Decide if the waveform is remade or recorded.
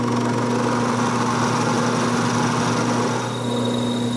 recorded